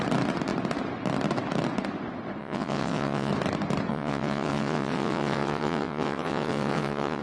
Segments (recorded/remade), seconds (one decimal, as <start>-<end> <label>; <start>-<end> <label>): 0.0-2.4 recorded; 2.4-3.3 remade; 3.3-3.9 recorded; 3.9-7.2 remade